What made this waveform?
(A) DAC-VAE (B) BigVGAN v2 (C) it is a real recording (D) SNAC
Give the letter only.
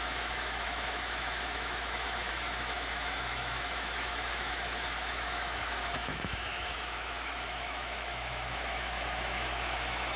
A